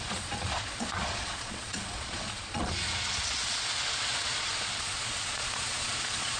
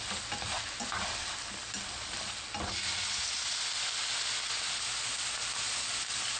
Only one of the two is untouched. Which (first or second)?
second